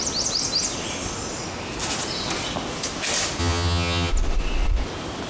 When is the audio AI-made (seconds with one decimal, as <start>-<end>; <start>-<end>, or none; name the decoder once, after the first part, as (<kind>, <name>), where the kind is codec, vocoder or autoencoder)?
3.4-4.1 (vocoder, HiFi-GAN)

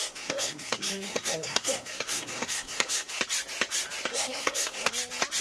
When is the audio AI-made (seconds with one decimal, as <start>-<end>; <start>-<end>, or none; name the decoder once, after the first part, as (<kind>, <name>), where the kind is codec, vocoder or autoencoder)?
0.0-3.2 (codec, SNAC); 4.1-4.9